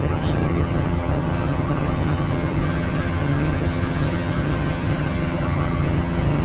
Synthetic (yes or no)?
yes